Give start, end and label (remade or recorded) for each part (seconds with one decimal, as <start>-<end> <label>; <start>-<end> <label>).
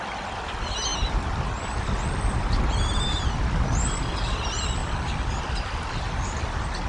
0.0-6.9 recorded